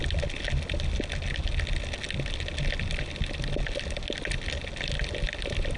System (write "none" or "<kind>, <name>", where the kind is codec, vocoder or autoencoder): none